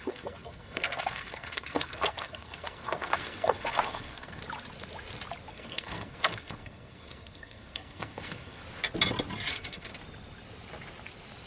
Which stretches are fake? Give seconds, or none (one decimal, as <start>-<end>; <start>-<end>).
0.0-4.4; 5.5-8.6; 9.5-9.9